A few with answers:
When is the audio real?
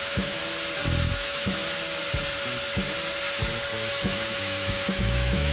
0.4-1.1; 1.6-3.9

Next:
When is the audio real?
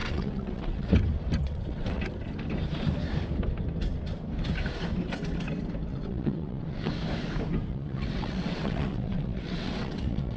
0.9-1.4; 2.0-5.9; 6.9-7.7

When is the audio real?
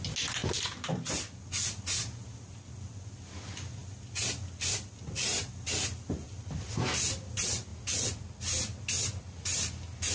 0.0-10.1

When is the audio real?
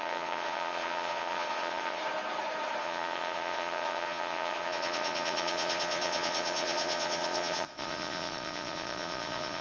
2.0-2.8